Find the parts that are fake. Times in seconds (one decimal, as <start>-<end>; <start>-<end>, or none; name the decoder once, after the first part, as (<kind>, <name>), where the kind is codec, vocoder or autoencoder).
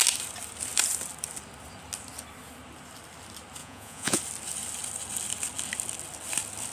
3.6-4.2 (vocoder, Vocos)